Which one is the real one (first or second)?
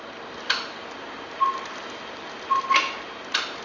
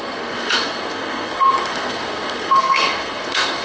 first